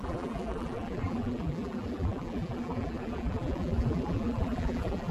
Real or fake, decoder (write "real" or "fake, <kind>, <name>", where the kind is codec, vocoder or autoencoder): fake, vocoder, BigVGAN v2